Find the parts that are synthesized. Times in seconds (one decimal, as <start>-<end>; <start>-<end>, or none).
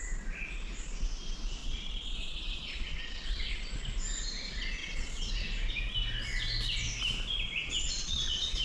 1.6-3.5; 4.8-5.3; 7.6-8.6